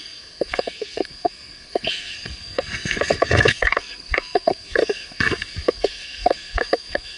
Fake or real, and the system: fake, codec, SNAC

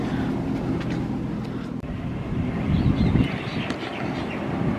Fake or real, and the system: real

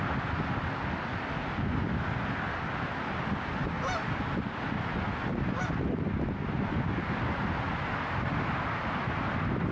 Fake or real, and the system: real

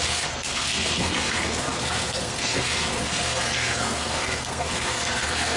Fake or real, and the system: fake, codec, SNAC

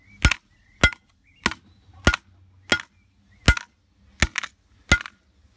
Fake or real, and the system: real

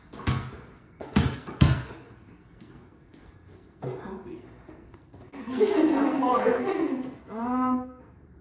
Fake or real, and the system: fake, codec, SNAC